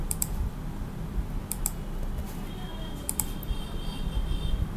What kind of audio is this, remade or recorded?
recorded